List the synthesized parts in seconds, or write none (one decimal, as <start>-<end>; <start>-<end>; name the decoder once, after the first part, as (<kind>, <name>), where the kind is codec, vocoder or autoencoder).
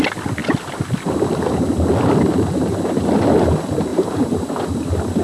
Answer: 3.9-4.5 (vocoder, BigVGAN v2)